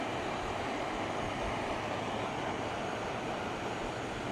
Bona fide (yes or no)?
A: yes